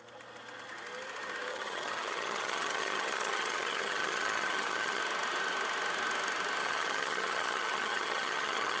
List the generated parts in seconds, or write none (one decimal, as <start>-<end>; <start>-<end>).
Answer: 1.5-5.0; 6.6-8.8